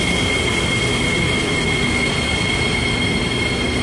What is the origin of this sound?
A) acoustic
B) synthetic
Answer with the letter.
A